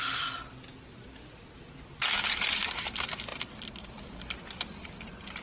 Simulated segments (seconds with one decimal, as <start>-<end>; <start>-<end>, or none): none